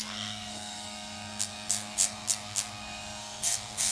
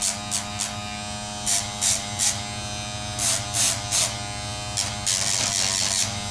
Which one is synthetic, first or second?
first